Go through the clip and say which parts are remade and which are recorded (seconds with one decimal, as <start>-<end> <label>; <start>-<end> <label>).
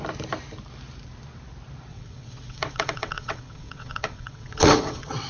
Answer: 0.0-1.9 recorded; 1.9-5.3 remade